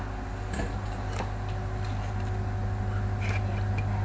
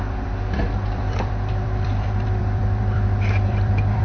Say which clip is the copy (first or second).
second